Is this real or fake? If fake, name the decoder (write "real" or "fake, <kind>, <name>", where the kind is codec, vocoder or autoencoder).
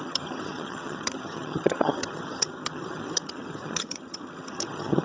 fake, vocoder, HiFi-GAN